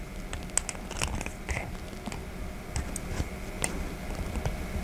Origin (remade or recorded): recorded